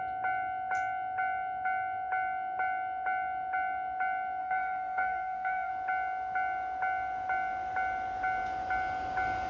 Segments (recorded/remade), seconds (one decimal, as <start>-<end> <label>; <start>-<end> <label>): 0.0-4.4 recorded; 4.4-5.7 remade; 5.7-9.5 recorded